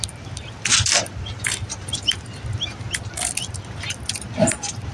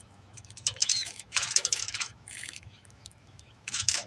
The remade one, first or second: second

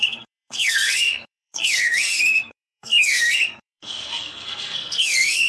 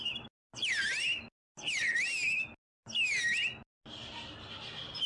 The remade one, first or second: first